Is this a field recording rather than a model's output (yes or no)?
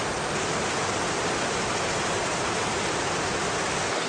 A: yes